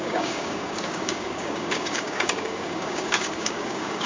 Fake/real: fake